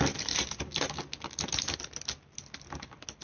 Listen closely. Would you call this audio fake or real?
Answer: real